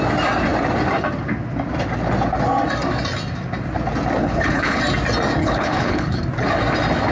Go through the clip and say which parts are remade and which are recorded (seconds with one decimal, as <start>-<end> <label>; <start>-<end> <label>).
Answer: 0.0-4.2 recorded; 4.2-4.8 remade; 4.8-5.4 recorded; 5.4-6.2 remade; 6.2-7.1 recorded